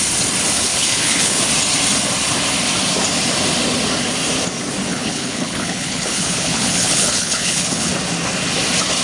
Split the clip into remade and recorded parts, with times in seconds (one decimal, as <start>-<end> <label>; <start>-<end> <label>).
0.0-0.7 recorded; 0.7-1.4 remade; 1.4-4.9 recorded; 4.9-7.9 remade; 7.9-9.0 recorded